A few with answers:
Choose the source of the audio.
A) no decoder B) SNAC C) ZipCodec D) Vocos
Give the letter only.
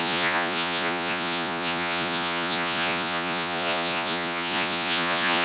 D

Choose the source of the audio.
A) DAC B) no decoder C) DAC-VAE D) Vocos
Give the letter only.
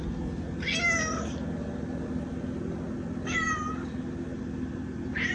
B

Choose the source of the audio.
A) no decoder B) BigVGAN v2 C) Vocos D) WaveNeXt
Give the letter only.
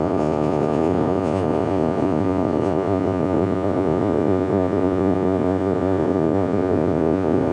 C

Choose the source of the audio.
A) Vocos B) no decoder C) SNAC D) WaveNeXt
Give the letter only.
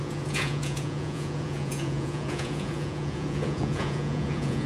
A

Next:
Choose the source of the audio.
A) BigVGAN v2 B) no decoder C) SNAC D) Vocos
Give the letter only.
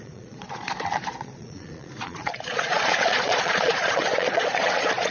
D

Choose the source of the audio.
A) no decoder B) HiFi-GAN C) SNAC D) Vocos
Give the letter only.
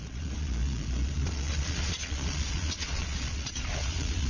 D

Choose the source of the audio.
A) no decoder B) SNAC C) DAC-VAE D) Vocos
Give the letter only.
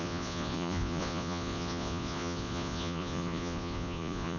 D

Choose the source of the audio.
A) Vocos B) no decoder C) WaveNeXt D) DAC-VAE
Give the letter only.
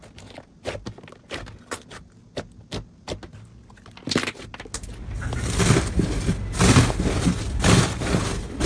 B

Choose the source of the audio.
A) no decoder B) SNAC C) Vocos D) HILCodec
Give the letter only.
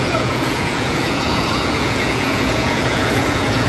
C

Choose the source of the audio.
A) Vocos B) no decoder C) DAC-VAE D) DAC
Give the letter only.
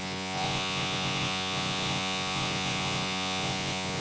A